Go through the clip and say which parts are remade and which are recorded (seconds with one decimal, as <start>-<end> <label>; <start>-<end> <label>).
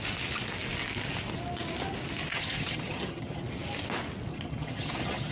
0.0-2.3 recorded; 2.3-3.4 remade; 3.4-4.3 recorded; 4.3-5.3 remade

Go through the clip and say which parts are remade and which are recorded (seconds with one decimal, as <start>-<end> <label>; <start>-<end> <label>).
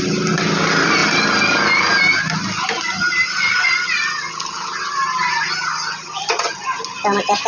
0.0-7.5 recorded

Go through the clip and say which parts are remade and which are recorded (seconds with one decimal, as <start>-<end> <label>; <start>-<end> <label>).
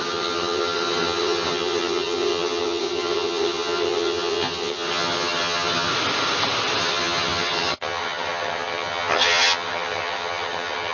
0.0-5.9 remade; 5.9-6.8 recorded; 6.8-10.9 remade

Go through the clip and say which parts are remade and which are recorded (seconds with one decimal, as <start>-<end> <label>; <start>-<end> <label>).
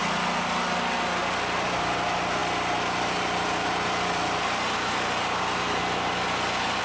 0.0-6.8 recorded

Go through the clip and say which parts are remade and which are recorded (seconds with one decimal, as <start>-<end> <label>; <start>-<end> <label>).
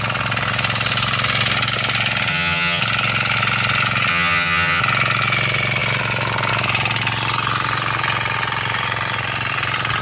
0.0-2.3 recorded; 2.3-2.8 remade; 2.8-4.1 recorded; 4.1-4.8 remade; 4.8-10.0 recorded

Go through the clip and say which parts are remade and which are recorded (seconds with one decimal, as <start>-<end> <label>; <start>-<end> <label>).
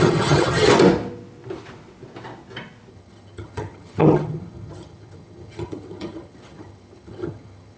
0.0-0.7 remade; 0.7-2.9 recorded; 2.9-7.8 remade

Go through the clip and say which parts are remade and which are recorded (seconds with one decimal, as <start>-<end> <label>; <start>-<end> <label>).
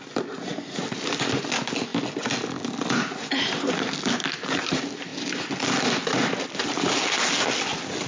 0.0-8.1 recorded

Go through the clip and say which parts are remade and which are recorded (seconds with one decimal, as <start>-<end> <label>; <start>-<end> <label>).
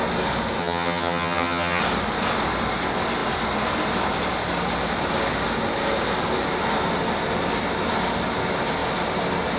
0.0-0.6 recorded; 0.6-1.8 remade; 1.8-9.6 recorded